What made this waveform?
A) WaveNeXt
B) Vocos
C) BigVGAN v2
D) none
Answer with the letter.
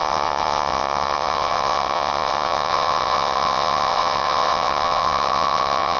A